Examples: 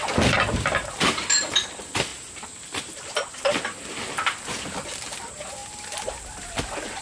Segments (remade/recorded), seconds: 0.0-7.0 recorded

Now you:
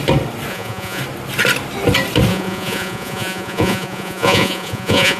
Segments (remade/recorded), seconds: 0.0-0.5 recorded; 0.5-1.0 remade; 1.0-2.3 recorded; 2.3-5.2 remade

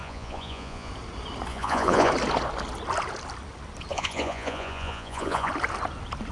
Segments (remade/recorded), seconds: 0.0-0.9 remade; 0.9-1.5 recorded; 1.5-2.1 remade; 2.1-3.9 recorded; 3.9-5.5 remade; 5.5-6.3 recorded

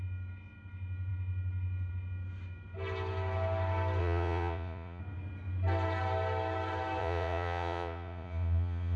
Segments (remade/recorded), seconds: 0.0-4.0 recorded; 4.0-5.0 remade; 5.0-7.0 recorded; 7.0-9.0 remade

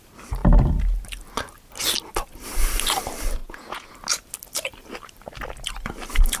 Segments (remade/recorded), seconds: 0.0-3.4 recorded; 3.4-3.9 remade; 3.9-6.4 recorded

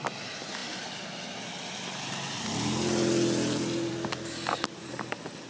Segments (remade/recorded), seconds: 0.0-5.5 recorded

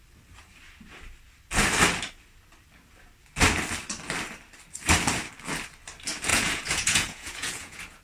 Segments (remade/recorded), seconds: 0.0-6.3 recorded; 6.3-8.0 remade